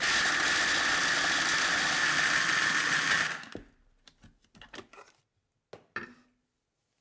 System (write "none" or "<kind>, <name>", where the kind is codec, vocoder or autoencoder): none